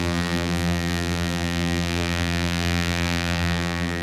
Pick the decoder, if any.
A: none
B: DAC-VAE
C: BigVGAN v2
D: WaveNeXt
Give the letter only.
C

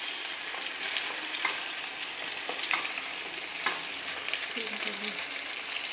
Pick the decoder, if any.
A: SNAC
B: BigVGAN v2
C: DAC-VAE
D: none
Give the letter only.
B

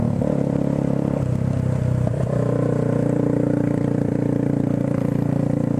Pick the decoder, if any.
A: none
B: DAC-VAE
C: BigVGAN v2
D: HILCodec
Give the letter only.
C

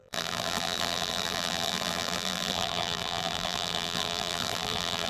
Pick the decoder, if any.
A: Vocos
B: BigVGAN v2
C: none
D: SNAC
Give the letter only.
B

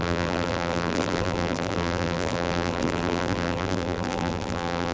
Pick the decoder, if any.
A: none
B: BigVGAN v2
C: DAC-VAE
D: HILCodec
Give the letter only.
B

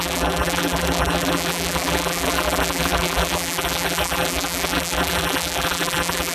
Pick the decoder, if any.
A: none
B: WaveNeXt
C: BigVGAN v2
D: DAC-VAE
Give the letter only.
C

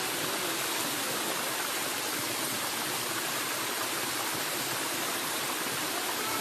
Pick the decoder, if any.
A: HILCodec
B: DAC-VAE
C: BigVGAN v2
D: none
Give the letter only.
C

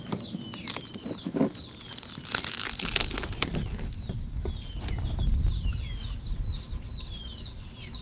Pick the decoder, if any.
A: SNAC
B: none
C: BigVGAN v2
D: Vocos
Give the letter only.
B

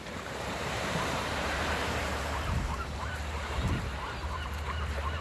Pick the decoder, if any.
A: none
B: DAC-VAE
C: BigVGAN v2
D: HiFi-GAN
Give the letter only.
C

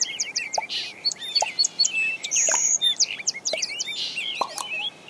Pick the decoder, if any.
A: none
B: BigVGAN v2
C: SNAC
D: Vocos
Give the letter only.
B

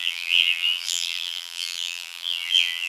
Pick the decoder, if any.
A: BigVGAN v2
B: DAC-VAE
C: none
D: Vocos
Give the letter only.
A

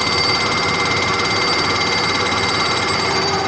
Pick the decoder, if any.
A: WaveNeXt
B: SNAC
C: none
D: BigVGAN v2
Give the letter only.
D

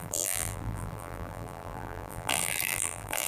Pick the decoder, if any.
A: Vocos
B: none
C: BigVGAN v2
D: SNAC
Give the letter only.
C